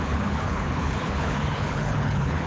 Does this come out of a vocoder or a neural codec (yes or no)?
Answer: yes